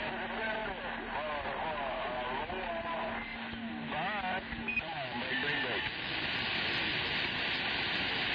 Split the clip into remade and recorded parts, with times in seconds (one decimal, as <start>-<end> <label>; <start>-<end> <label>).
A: 0.0-8.3 recorded